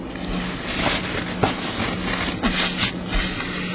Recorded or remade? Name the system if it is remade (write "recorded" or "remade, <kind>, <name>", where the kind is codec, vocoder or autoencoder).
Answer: recorded